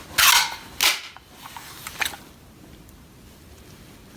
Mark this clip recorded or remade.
recorded